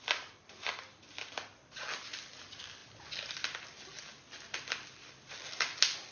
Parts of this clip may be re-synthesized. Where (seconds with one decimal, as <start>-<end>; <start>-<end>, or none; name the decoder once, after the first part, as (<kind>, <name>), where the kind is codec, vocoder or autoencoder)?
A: none